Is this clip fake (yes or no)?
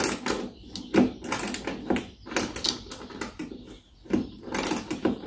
no